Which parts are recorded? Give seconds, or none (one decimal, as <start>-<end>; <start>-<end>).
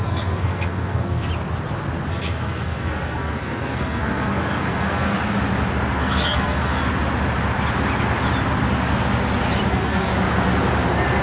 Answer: 1.3-2.1; 5.2-6.0; 6.8-9.7; 10.1-11.2